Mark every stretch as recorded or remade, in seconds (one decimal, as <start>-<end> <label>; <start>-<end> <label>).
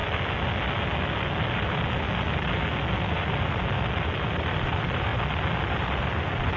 0.0-4.0 recorded; 4.0-5.1 remade; 5.1-6.0 recorded; 6.0-6.6 remade